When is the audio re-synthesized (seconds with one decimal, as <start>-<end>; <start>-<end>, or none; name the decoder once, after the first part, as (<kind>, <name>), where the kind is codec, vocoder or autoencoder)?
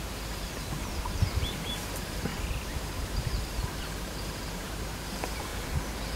0.0-2.3 (vocoder, BigVGAN v2); 3.2-5.5